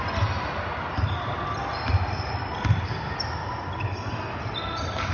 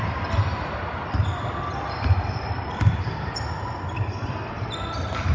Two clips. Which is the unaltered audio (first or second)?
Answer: first